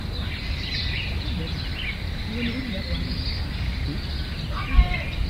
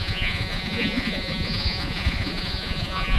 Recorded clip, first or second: first